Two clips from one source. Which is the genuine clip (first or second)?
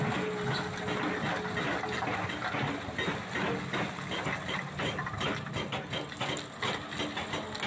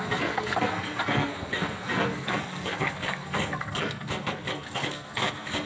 first